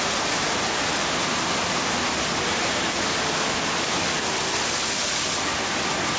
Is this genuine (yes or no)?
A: yes